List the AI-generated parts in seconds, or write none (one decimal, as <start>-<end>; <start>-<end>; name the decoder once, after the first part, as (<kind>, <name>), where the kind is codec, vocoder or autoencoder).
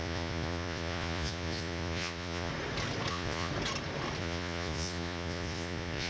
0.0-2.5 (vocoder, Vocos); 3.1-3.5; 4.2-6.1